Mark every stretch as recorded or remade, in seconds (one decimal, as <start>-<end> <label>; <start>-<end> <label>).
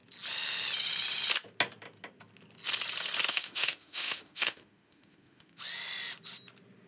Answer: 0.0-3.3 recorded; 3.3-5.6 remade; 5.6-6.9 recorded